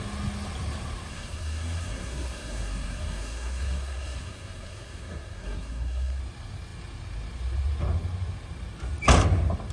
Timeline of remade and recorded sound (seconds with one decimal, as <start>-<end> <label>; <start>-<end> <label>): 0.0-1.1 recorded; 1.1-6.2 remade; 6.2-9.7 recorded